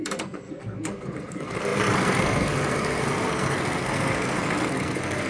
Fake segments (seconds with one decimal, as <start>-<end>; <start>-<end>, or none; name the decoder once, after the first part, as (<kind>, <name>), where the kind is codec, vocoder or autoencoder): 0.0-5.3 (codec, SNAC)